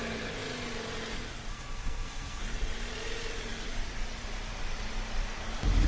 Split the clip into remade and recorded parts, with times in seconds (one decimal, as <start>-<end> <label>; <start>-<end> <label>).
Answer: 0.0-1.5 recorded; 1.5-2.4 remade; 2.4-5.9 recorded